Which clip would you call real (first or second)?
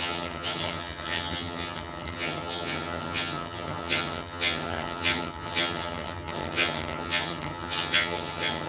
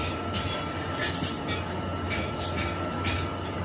second